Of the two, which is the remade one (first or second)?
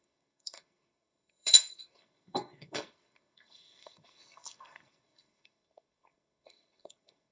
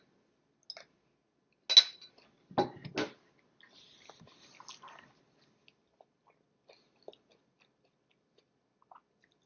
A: first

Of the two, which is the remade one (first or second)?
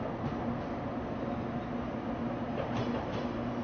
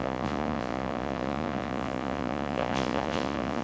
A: second